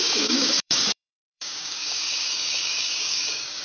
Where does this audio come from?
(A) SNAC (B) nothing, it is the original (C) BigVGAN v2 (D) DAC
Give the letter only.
D